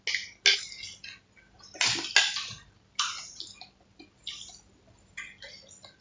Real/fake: real